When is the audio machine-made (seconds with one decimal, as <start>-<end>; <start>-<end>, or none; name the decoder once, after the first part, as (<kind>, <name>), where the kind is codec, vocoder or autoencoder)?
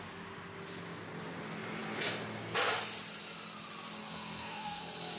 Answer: 4.0-4.8 (codec, SNAC)